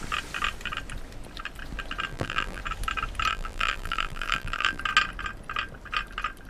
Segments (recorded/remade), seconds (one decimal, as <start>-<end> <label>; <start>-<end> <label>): 0.0-2.1 recorded; 2.1-2.6 remade; 2.6-3.3 recorded; 3.3-4.8 remade; 4.8-6.5 recorded